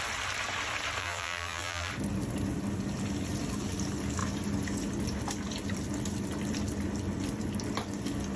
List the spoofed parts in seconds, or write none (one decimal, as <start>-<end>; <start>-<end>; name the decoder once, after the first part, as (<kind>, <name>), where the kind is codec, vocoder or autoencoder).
1.0-1.9 (vocoder, BigVGAN v2)